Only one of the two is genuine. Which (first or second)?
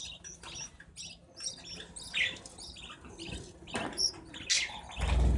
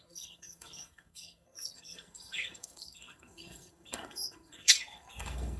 first